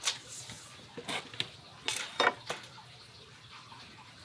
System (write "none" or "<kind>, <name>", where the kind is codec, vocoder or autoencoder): none